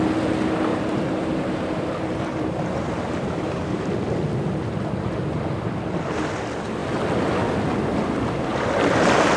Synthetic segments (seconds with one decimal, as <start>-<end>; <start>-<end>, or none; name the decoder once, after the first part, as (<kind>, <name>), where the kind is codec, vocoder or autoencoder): 0.7-3.9 (vocoder, BigVGAN v2)